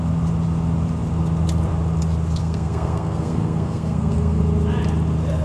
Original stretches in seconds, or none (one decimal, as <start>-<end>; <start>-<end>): 0.0-2.4; 4.4-5.4